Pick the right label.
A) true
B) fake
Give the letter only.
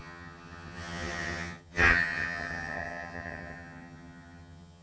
B